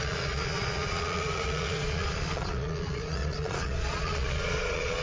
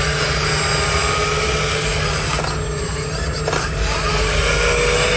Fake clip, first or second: first